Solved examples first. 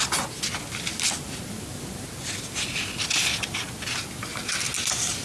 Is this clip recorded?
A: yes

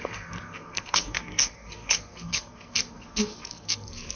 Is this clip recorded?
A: no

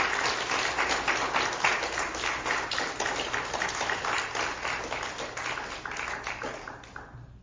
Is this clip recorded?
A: yes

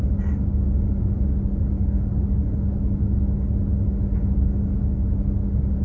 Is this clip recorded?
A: yes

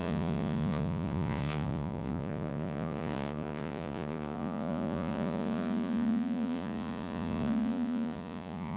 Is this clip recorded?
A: no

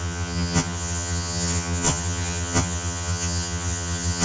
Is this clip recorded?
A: no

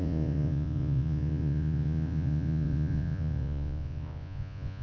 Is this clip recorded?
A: no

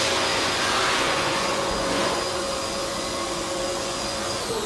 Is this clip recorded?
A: no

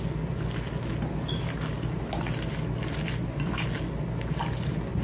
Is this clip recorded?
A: yes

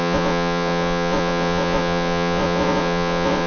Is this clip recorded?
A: no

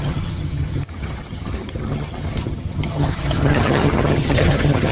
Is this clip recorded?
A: no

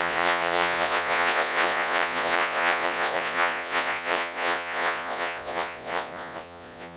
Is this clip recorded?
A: no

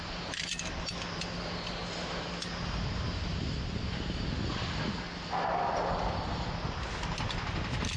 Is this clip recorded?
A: yes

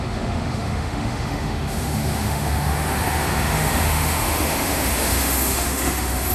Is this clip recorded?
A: no